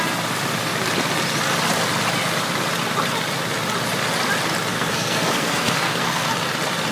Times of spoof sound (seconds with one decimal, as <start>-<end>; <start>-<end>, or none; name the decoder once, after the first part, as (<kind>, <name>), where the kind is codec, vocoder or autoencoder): 4.7-6.3 (codec, SNAC)